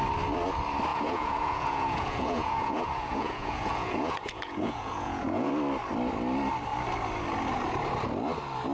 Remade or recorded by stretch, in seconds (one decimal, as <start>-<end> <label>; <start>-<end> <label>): 0.0-0.9 recorded; 0.9-5.5 remade; 5.5-8.7 recorded